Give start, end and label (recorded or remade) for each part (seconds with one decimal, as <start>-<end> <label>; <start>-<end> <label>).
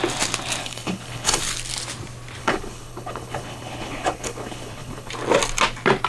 0.0-0.6 recorded; 0.6-1.4 remade; 1.4-2.4 recorded; 2.4-5.1 remade; 5.1-6.1 recorded